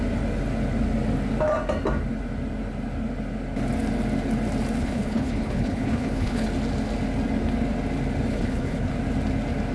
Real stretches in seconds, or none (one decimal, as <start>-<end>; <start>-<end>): 0.0-4.8; 6.5-8.3; 8.9-9.7